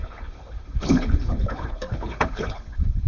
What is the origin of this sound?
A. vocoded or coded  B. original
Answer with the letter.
A